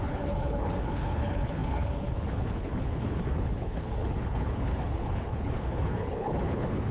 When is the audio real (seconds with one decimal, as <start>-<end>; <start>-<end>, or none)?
none